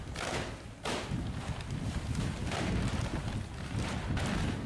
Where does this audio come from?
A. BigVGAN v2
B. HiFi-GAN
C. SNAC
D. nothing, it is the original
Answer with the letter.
D